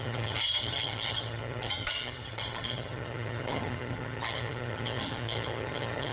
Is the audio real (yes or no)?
no